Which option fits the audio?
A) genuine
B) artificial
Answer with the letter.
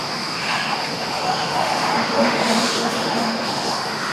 B